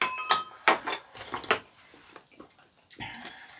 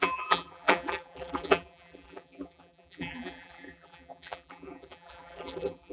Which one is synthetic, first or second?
second